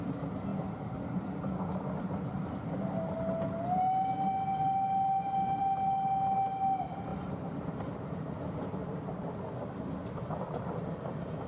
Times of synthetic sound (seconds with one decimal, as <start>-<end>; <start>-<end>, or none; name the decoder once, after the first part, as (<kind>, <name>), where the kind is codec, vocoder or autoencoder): 7.1-8.3 (vocoder, BigVGAN v2)